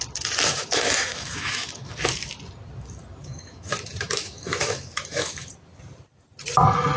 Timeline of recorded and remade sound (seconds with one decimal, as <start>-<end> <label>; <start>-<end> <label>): 0.0-0.5 recorded; 0.5-2.1 remade; 2.1-3.2 recorded; 3.2-5.5 remade; 5.5-7.0 recorded